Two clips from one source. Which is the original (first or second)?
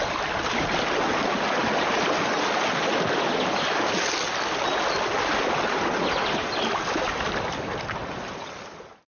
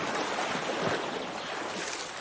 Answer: first